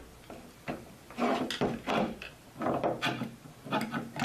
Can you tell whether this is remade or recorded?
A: recorded